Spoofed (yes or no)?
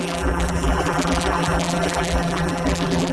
yes